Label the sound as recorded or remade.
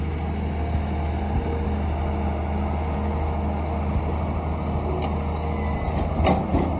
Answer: recorded